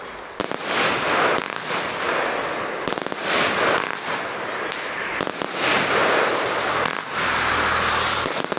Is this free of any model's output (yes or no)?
yes